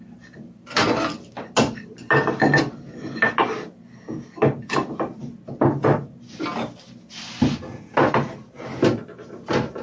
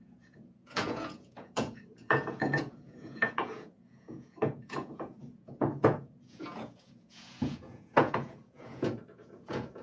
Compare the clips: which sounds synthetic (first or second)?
second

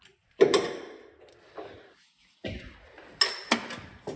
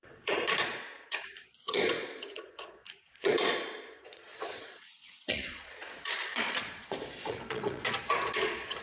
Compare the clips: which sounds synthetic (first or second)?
second